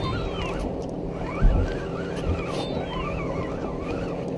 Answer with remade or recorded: recorded